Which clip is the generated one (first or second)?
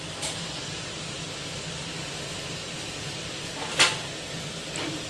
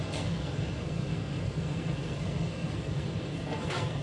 second